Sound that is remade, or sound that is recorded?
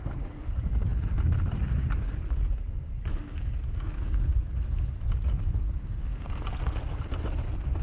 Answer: recorded